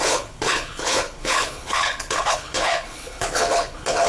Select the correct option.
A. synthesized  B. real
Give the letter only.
A